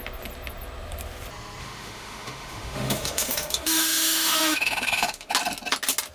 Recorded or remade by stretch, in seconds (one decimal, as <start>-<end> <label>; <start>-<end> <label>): 0.0-1.6 recorded; 1.6-5.3 remade; 5.3-6.1 recorded